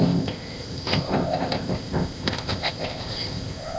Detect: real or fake fake